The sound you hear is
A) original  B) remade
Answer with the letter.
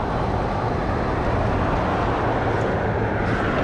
A